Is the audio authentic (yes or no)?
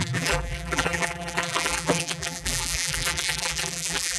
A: no